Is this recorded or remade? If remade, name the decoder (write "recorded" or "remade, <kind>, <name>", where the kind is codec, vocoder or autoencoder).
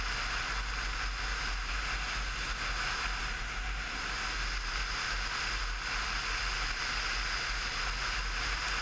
recorded